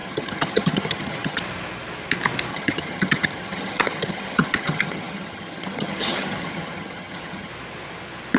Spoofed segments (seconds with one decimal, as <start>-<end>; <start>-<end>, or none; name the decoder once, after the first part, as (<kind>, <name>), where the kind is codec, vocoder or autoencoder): 0.0-1.4 (vocoder, HiFi-GAN); 2.5-7.5